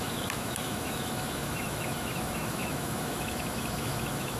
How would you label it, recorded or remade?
remade